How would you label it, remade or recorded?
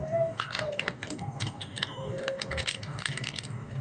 remade